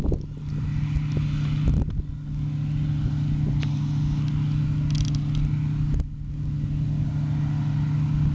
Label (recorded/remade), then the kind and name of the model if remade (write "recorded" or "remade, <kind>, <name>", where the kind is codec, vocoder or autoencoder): recorded